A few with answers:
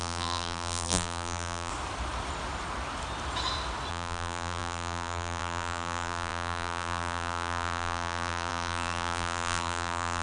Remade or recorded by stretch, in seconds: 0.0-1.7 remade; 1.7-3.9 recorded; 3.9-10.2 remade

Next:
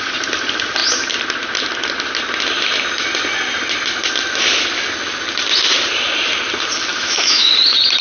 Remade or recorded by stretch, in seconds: 0.0-6.9 recorded; 6.9-7.5 remade; 7.5-8.0 recorded

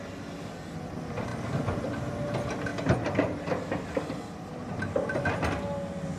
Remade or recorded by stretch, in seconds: 0.0-6.2 recorded

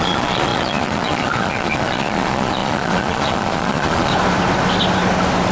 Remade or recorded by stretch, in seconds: 0.0-4.1 remade; 4.1-5.5 recorded

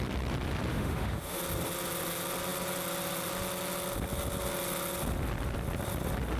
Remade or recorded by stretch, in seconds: 0.0-0.7 recorded; 0.7-1.4 remade; 1.4-6.4 recorded

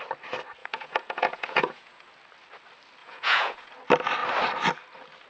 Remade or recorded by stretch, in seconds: 0.0-0.6 recorded; 0.6-2.1 remade; 2.1-3.0 recorded; 3.0-3.7 remade; 3.7-5.3 recorded

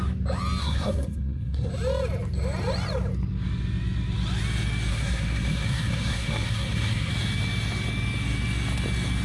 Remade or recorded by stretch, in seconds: 0.0-0.6 recorded; 0.6-1.7 remade; 1.7-4.9 recorded; 4.9-7.1 remade; 7.1-9.2 recorded